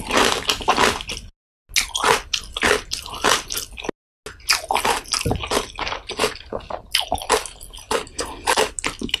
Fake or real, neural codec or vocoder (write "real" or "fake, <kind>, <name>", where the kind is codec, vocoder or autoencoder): real